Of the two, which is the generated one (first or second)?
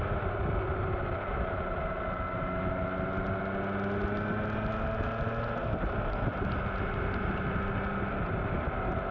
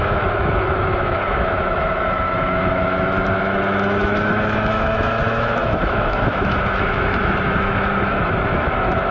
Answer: second